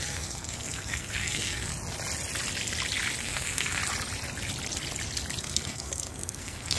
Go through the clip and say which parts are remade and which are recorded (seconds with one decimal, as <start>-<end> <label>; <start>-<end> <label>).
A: 0.0-1.7 remade; 1.7-3.2 recorded; 3.2-3.8 remade; 3.8-5.4 recorded; 5.4-6.8 remade